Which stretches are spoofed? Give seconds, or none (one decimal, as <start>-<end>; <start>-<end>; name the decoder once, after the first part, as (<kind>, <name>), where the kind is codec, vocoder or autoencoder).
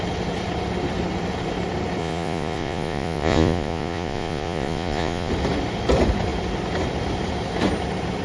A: 2.0-5.3 (vocoder, Vocos)